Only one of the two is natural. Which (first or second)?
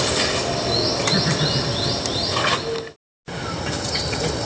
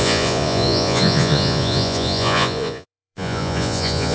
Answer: first